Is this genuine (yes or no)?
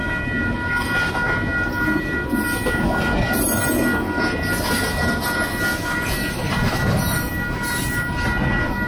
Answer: yes